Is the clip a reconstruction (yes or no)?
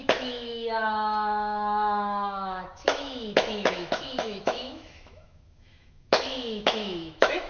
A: yes